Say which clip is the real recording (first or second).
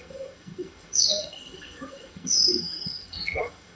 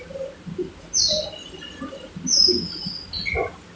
second